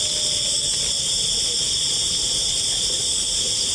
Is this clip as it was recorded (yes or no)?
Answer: yes